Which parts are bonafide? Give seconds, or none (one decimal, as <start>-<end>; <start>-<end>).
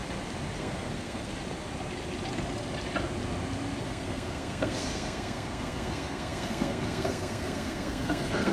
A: 0.0-0.6; 1.3-3.8